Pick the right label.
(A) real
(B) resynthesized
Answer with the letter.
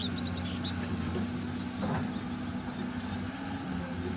A